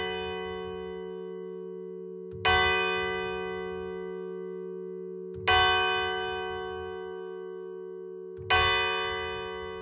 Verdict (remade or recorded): recorded